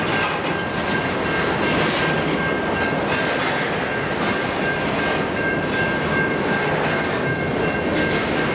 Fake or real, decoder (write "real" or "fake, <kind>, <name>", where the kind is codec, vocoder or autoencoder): real